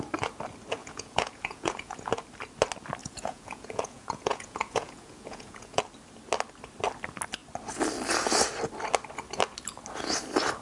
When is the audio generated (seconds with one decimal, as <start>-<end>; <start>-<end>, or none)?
0.8-2.1; 3.0-5.8